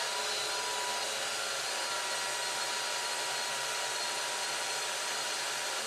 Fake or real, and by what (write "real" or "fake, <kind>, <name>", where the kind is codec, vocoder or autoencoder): real